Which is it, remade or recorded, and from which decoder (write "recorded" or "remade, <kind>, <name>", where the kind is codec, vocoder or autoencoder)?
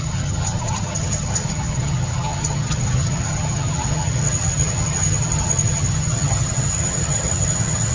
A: remade, vocoder, HiFi-GAN